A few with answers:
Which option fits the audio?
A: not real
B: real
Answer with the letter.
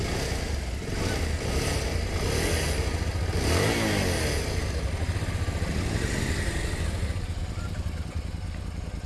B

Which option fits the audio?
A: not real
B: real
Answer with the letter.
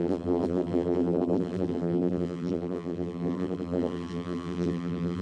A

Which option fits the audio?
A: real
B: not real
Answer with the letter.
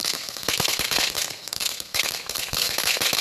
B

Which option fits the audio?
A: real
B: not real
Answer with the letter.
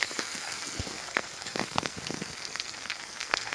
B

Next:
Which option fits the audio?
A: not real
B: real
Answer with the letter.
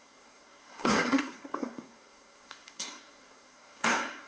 A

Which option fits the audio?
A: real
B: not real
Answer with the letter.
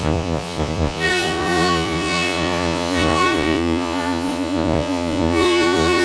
B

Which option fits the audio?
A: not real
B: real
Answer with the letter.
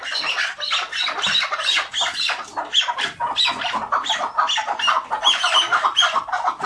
B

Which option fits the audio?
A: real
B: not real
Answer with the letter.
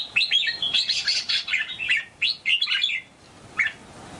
A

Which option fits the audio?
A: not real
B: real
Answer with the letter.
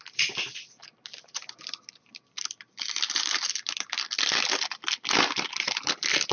B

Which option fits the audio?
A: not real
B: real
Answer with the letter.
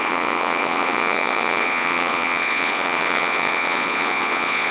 A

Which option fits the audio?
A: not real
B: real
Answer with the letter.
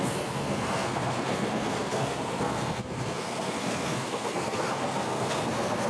A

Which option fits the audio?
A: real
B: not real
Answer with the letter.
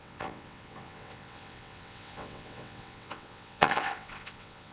B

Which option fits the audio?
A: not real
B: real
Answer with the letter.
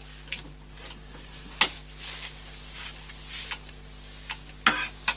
B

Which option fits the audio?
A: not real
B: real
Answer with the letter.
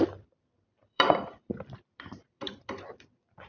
A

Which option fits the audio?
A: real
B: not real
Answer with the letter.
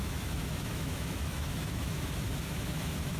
B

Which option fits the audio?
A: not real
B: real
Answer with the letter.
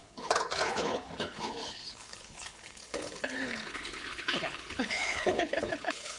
A